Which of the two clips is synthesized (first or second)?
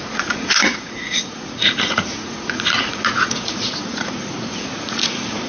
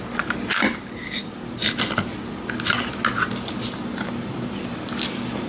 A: first